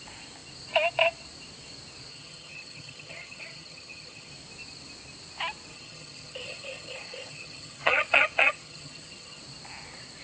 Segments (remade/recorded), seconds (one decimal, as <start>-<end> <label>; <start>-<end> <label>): 0.0-2.1 recorded; 2.1-4.3 remade; 4.3-5.7 recorded; 5.7-9.4 remade; 9.4-10.2 recorded

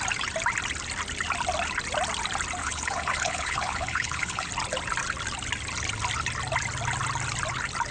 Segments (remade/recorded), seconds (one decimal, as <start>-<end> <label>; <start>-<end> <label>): 0.0-2.6 recorded; 2.6-4.5 remade; 4.5-7.9 recorded

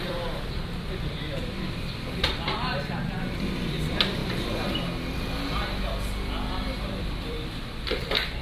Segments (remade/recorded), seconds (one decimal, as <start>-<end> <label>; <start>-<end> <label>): 0.0-4.2 remade; 4.2-6.5 recorded; 6.5-8.4 remade

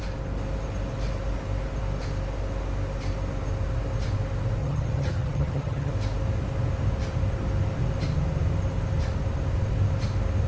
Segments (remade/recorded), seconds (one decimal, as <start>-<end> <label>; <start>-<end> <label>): 0.0-4.6 recorded; 4.6-5.9 remade; 5.9-10.5 recorded

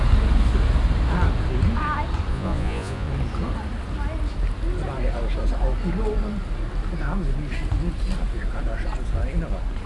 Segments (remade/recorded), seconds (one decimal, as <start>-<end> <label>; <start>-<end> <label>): 0.0-2.3 recorded; 2.3-3.1 remade; 3.1-9.9 recorded

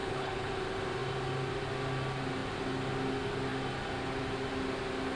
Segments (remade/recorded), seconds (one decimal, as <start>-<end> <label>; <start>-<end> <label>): 0.0-0.5 remade; 0.5-5.1 recorded

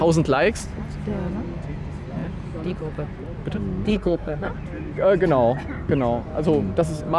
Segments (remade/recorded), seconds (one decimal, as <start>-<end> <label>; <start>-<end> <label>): 0.0-3.9 recorded; 3.9-4.5 remade; 4.5-7.2 recorded